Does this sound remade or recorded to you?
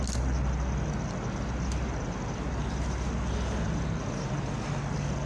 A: recorded